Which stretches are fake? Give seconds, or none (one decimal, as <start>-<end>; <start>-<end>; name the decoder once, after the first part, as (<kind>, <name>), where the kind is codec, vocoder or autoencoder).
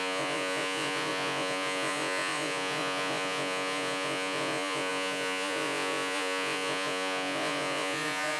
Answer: 0.0-8.4 (vocoder, Vocos)